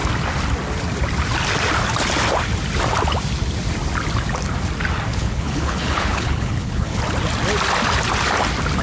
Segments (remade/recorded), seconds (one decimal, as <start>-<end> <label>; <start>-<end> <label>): 0.0-5.1 recorded; 5.1-7.0 remade; 7.0-8.8 recorded